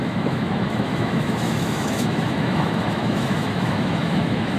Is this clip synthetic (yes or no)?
yes